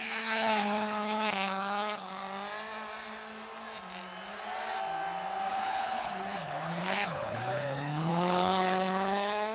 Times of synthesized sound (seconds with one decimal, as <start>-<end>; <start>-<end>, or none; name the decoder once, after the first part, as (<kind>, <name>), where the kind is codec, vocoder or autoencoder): 0.0-2.2 (codec, HILCodec); 5.5-9.5